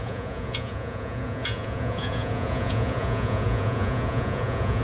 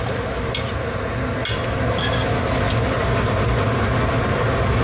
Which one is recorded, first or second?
second